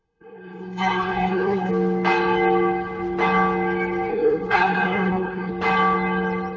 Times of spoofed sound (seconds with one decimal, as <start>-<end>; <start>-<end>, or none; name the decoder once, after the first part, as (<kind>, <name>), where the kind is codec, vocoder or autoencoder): 0.0-1.7 (codec, SNAC); 4.1-5.5